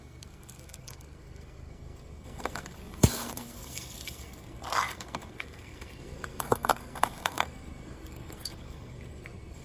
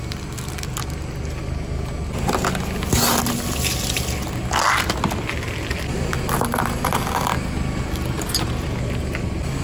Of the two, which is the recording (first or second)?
second